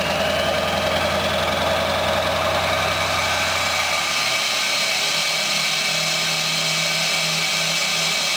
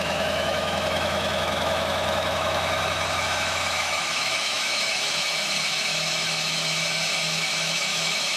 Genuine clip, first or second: first